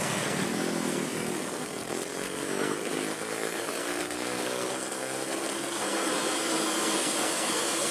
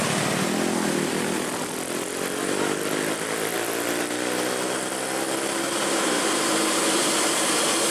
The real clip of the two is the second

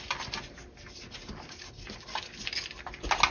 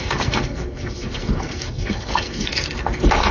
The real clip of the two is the first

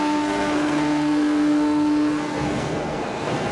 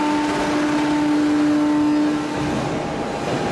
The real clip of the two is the second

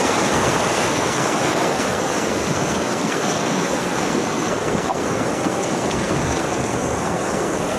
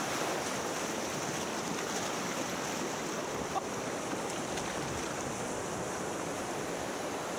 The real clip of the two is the second